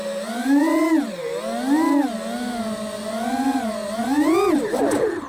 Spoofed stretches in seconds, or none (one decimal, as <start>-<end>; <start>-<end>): none

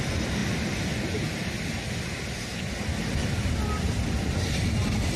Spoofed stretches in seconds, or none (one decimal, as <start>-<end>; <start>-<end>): none

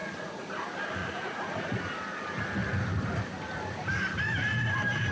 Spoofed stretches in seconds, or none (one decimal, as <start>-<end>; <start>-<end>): 0.0-0.5; 1.0-1.8

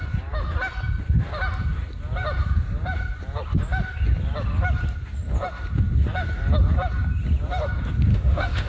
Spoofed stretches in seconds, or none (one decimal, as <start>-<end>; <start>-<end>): 8.1-8.7

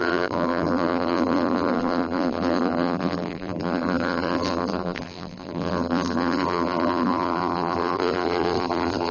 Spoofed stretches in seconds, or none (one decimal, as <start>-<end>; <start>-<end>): 0.0-9.1

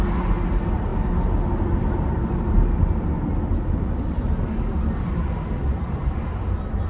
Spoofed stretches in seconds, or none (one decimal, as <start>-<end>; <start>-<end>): none